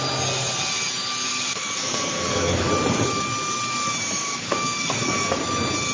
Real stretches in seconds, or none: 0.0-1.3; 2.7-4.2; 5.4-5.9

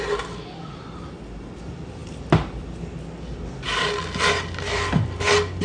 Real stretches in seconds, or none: 0.0-5.6

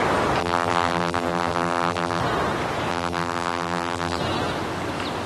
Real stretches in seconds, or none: 0.0-0.4; 2.2-2.9; 4.2-5.3

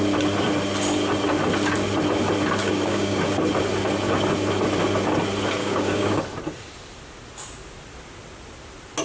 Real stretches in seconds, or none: 0.0-2.6; 3.2-5.6; 6.2-9.0

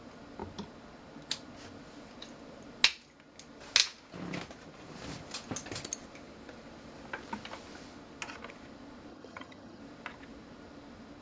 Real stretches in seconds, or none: 0.0-9.1; 9.8-11.2